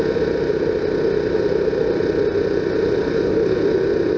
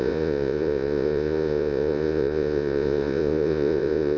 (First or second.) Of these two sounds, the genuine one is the first